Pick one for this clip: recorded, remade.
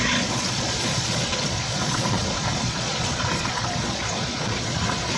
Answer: remade